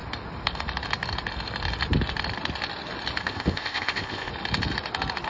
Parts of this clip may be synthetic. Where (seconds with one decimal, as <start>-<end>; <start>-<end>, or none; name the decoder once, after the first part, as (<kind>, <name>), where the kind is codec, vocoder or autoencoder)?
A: 3.2-4.3 (codec, ZipCodec)